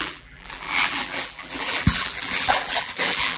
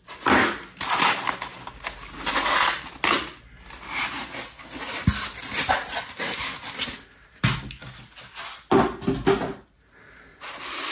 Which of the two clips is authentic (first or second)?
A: second